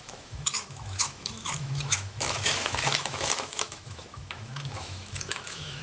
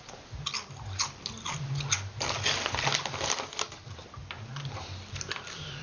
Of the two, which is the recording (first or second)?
second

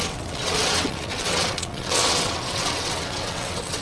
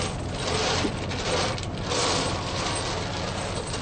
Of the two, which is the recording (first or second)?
second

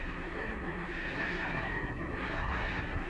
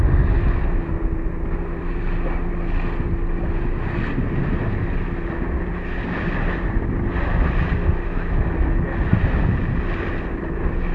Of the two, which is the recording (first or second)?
second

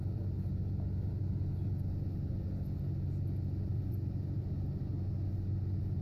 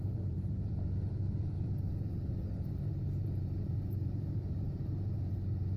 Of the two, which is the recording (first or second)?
first